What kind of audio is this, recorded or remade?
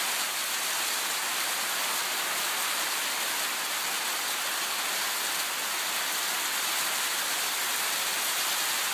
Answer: recorded